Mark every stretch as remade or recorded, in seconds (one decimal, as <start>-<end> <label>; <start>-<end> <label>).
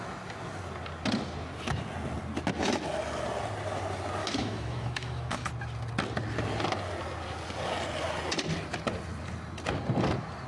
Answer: 0.0-4.2 recorded; 4.2-5.5 remade; 5.5-10.5 recorded